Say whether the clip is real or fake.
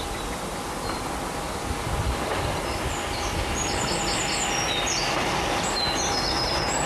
real